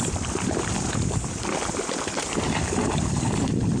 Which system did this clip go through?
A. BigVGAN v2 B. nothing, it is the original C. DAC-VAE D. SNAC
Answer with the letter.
A